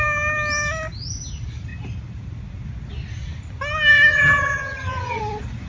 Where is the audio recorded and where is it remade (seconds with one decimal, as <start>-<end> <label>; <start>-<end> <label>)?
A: 0.0-4.1 recorded; 4.1-5.2 remade; 5.2-5.7 recorded